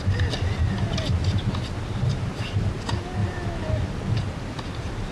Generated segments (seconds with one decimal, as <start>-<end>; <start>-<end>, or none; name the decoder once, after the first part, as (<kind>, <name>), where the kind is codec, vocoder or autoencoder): none